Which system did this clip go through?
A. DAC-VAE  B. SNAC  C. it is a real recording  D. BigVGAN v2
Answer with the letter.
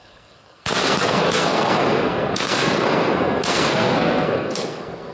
B